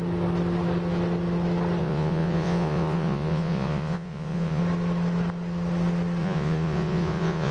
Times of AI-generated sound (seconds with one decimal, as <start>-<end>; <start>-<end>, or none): 1.8-4.6; 6.2-7.5